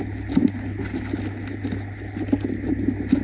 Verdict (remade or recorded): recorded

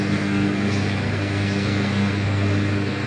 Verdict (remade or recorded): remade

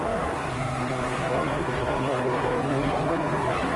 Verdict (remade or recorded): remade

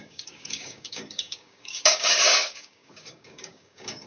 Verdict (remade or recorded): remade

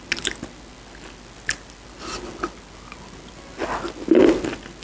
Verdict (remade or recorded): recorded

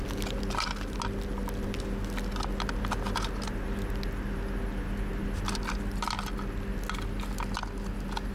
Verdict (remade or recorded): recorded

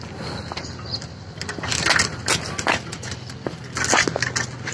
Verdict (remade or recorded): recorded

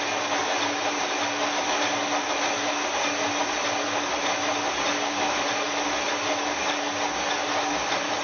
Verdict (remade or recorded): recorded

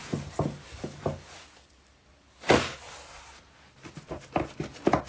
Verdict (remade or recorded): recorded